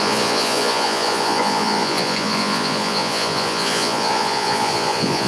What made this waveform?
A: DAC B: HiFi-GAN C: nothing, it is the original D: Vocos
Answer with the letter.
D